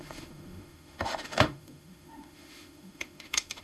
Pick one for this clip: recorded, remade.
remade